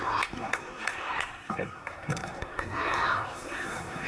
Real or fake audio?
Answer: fake